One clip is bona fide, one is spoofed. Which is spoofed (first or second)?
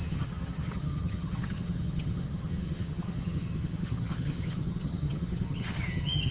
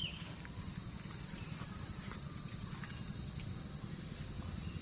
first